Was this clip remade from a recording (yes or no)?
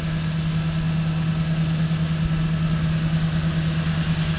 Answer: no